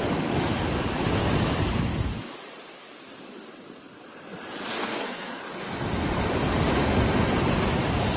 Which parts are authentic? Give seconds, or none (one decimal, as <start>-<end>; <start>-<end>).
0.0-4.8; 5.4-8.2